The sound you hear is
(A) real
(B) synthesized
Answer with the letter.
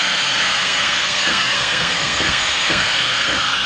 B